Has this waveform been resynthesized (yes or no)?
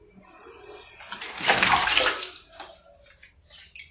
no